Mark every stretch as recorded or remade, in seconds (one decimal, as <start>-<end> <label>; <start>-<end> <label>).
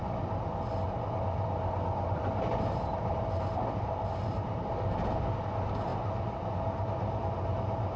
0.0-8.0 recorded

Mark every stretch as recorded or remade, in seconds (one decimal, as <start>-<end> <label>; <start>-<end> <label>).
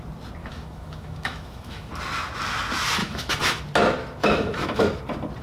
0.0-0.4 recorded; 0.4-1.9 remade; 1.9-3.0 recorded; 3.0-3.6 remade; 3.6-4.2 recorded; 4.2-5.0 remade; 5.0-5.4 recorded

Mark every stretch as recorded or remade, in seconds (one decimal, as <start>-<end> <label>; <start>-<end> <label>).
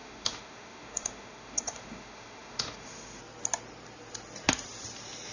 0.0-3.2 remade; 3.2-5.3 recorded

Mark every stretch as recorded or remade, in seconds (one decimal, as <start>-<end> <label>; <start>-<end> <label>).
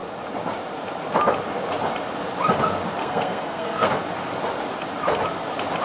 0.0-3.0 recorded; 3.0-3.9 remade; 3.9-5.8 recorded